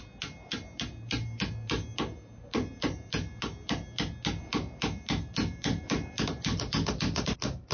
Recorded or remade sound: recorded